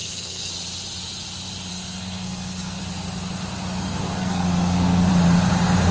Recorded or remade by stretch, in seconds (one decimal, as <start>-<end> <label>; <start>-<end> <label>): 0.0-0.5 remade; 0.5-1.7 recorded; 1.7-2.8 remade; 2.8-4.0 recorded; 4.0-5.1 remade; 5.1-5.9 recorded